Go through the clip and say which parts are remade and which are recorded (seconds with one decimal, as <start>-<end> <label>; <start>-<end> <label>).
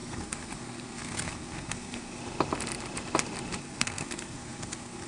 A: 0.0-2.2 remade; 2.2-3.6 recorded; 3.6-5.1 remade